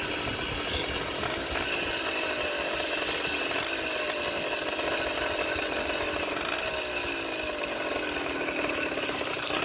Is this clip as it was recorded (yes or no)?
yes